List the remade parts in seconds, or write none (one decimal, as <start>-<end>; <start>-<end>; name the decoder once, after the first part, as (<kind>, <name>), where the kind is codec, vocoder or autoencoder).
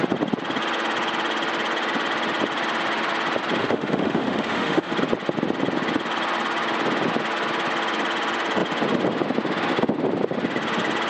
3.6-4.9 (autoencoder, DAC-VAE)